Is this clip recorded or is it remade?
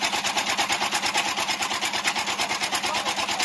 recorded